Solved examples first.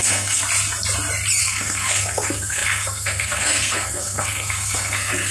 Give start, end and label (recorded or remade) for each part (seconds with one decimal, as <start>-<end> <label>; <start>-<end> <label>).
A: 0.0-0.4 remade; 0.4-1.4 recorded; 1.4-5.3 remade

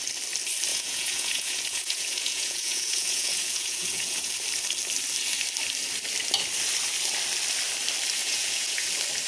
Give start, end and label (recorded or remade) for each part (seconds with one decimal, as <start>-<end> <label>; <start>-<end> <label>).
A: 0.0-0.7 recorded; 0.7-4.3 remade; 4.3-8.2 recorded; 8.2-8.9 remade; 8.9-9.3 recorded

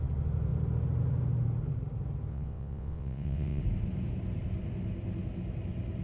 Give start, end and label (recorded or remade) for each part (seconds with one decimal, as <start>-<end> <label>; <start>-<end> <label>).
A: 0.0-2.3 recorded; 2.3-3.6 remade; 3.6-6.0 recorded

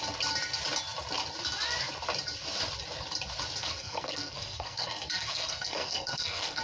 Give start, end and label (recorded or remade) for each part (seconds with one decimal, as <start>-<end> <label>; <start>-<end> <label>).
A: 0.0-3.6 recorded; 3.6-6.6 remade

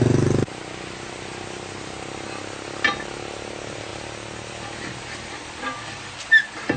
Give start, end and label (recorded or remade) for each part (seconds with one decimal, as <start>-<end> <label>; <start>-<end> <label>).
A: 0.0-6.8 recorded